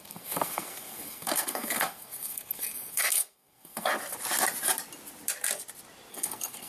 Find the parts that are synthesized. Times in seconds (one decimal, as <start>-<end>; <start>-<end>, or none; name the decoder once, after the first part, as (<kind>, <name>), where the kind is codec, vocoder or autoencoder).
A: 0.0-3.9 (codec, SNAC); 6.1-6.7